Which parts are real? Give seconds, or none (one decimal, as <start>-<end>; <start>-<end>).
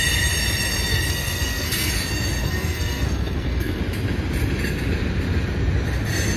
0.0-0.9; 1.9-2.4; 3.8-6.4